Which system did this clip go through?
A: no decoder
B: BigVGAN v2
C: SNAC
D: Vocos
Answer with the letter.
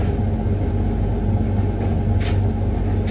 A